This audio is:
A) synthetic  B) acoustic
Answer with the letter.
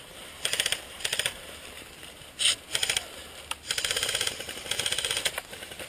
A